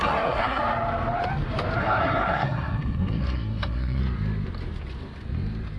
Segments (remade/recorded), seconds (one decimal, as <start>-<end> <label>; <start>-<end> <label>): 0.0-0.6 remade; 0.6-1.8 recorded; 1.8-4.0 remade; 4.0-5.8 recorded